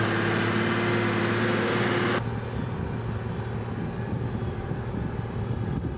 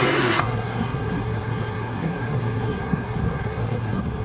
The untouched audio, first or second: first